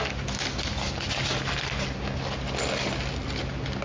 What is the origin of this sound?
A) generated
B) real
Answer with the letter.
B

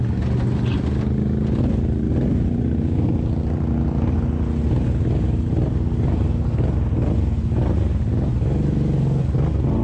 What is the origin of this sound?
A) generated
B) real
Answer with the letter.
B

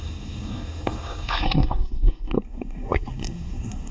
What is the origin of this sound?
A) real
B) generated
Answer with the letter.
B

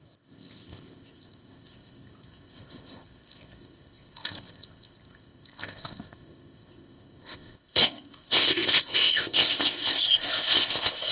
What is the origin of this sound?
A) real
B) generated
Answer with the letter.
B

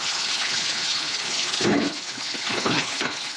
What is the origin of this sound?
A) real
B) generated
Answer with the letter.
B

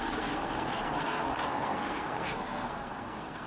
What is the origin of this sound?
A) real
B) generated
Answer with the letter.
B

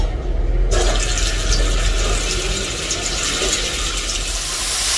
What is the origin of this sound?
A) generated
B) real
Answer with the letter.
B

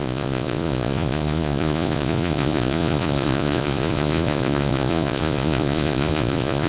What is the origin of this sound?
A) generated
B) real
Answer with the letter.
A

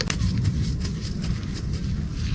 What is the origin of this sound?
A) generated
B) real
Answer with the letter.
B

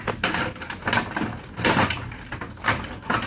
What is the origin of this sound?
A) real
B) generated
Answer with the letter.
A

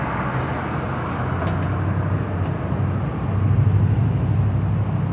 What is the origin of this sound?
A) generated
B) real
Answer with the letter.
B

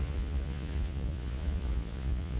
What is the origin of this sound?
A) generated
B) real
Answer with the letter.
A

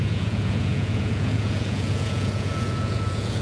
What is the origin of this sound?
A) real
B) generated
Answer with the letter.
B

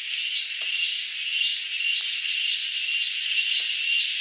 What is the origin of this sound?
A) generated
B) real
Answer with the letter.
B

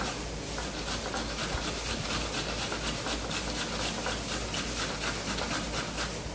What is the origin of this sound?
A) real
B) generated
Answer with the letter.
A